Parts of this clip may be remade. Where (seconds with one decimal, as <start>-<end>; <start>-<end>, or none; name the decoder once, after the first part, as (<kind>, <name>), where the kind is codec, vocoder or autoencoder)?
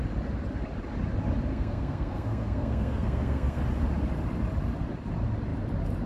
1.5-3.6 (codec, SNAC)